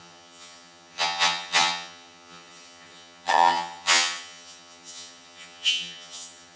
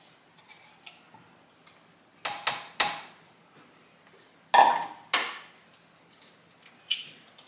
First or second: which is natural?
second